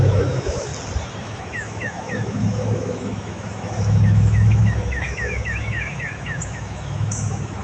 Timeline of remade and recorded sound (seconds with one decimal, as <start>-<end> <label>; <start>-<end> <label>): 0.0-0.7 remade; 0.7-1.2 recorded; 1.2-7.6 remade